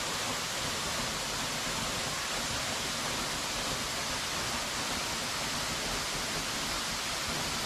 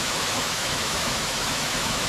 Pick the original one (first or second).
first